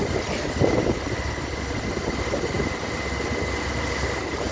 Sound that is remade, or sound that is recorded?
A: recorded